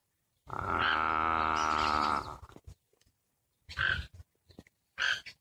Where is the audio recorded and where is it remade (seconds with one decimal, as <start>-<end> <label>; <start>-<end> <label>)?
0.0-5.4 recorded